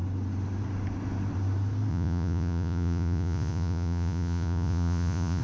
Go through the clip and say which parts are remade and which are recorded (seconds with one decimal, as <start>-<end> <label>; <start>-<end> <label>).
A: 0.0-1.9 recorded; 1.9-5.4 remade